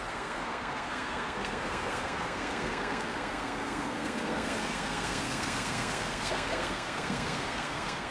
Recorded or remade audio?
remade